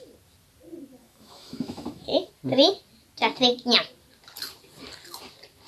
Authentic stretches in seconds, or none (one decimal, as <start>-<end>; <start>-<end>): 0.0-1.0; 2.3-5.7